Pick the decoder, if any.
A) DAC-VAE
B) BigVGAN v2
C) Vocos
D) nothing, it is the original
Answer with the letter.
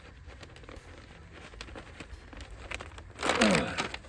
D